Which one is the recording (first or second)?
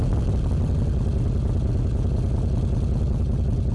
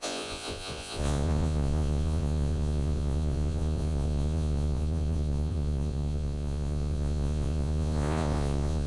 first